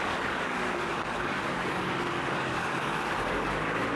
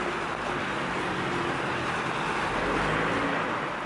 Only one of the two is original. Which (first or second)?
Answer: second